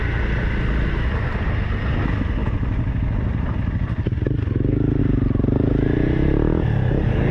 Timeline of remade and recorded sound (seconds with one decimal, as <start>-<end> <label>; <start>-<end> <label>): 0.0-7.3 recorded